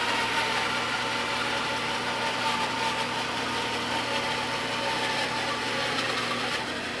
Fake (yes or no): no